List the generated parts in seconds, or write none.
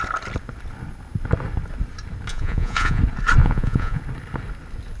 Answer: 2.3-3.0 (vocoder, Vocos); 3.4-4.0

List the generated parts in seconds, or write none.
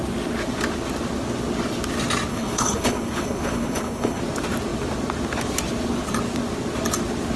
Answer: 2.3-4.2 (codec, HILCodec)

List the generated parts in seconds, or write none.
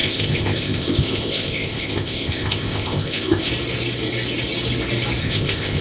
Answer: 0.0-3.5 (codec, ZipCodec); 5.2-5.8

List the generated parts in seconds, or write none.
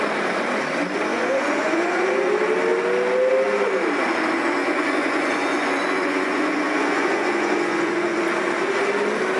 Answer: 1.1-2.0 (vocoder, Vocos); 4.6-8.2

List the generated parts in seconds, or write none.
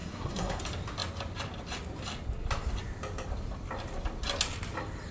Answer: 0.0-0.6 (codec, SNAC)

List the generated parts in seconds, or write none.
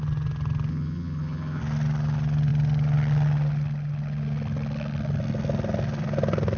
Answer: 0.7-1.6 (vocoder, HiFi-GAN)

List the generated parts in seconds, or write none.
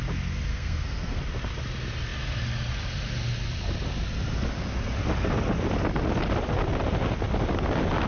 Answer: 0.5-1.2 (codec, SNAC)